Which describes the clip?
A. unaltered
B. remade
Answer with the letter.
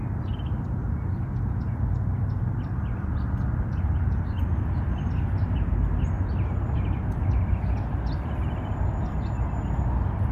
A